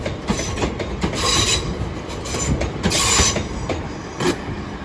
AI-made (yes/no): no